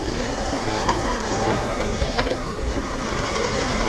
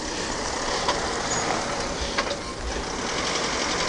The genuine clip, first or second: second